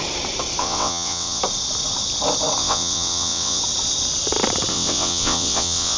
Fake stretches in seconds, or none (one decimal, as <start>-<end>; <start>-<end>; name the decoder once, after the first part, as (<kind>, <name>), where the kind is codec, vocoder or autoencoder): 0.6-1.4 (vocoder, WaveNeXt); 2.6-3.6; 4.7-6.0